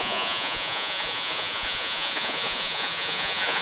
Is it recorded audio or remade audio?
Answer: remade